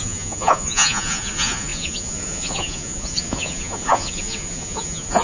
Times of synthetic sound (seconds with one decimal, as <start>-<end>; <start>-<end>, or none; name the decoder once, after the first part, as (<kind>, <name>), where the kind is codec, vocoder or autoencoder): 0.0-5.2 (vocoder, Vocos)